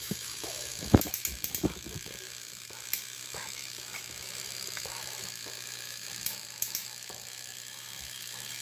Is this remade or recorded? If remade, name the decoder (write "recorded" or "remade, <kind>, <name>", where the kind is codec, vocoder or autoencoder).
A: remade, autoencoder, DAC-VAE